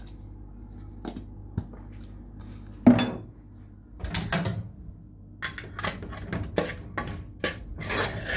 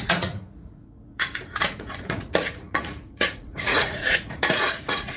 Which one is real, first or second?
first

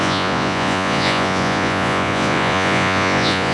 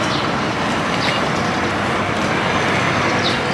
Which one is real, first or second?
second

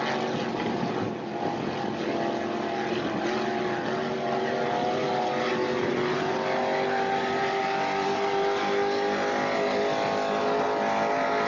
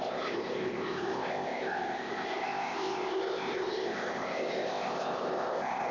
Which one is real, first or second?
first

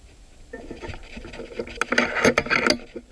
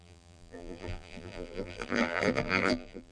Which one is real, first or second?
first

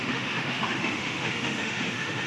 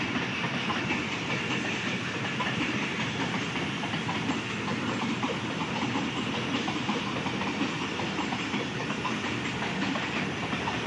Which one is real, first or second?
second